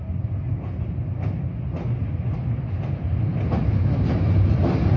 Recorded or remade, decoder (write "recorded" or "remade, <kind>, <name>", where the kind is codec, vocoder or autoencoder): recorded